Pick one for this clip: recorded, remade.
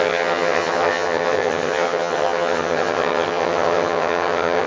remade